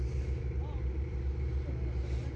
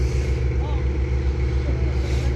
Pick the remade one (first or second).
first